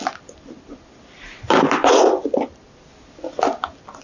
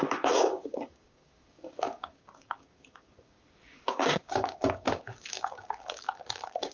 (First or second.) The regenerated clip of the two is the second